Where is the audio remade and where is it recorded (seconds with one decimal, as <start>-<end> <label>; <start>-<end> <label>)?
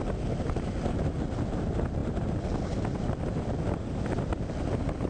0.0-5.1 recorded